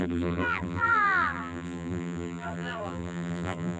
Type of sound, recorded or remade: remade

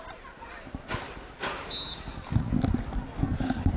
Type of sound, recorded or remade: recorded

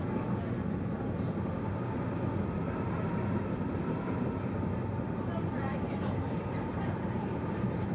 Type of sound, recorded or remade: recorded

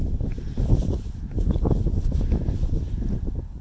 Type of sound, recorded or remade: recorded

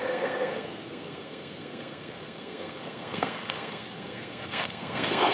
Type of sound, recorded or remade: remade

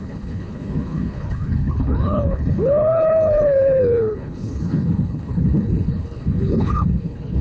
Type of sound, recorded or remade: remade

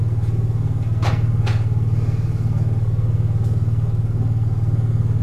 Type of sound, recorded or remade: remade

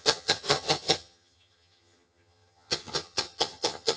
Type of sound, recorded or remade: remade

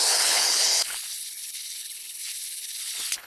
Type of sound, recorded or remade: remade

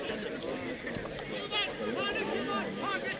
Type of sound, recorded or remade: recorded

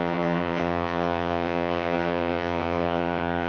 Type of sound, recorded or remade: remade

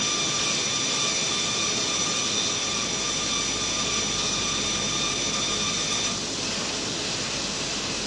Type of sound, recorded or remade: recorded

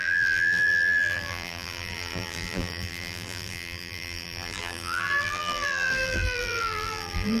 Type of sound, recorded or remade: remade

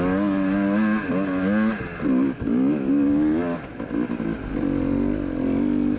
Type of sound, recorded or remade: recorded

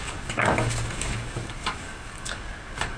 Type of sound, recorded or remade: remade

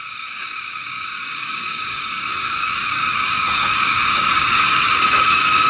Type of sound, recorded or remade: remade